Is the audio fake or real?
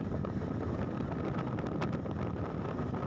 real